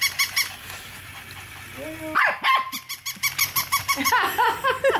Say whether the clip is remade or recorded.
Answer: recorded